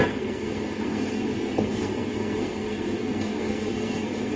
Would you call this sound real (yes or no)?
no